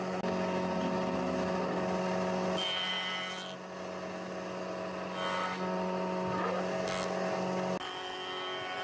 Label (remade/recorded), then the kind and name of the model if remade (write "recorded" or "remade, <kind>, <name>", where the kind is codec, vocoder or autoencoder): recorded